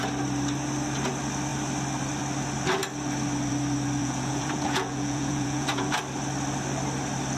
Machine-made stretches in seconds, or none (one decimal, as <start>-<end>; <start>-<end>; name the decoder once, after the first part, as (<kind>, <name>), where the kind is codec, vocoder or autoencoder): 4.0-6.0 (vocoder, Vocos)